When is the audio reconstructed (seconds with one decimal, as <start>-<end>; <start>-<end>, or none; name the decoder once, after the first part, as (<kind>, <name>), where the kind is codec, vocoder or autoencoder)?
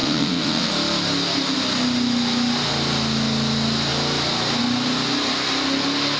0.0-0.7 (vocoder, WaveNeXt)